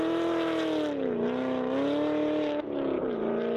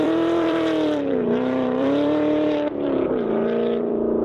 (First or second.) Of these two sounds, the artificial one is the second